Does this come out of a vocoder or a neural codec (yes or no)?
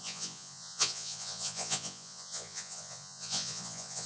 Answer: yes